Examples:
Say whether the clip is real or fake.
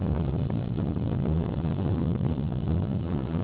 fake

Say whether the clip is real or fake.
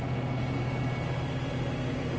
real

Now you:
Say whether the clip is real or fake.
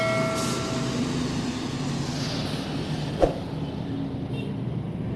real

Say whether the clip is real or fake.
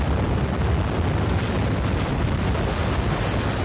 real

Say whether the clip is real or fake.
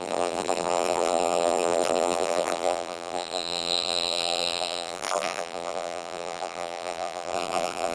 fake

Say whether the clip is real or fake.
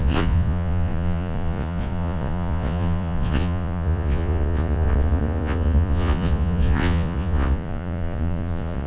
fake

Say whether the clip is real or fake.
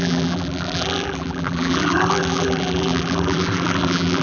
fake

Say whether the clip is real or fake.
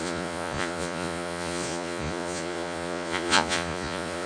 fake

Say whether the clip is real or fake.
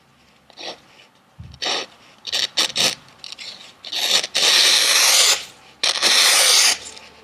real